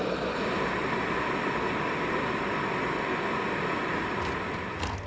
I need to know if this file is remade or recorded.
recorded